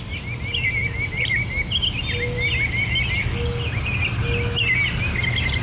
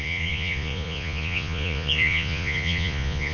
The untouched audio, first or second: first